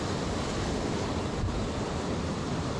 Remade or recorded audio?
recorded